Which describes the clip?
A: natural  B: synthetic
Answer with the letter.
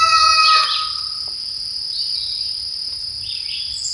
A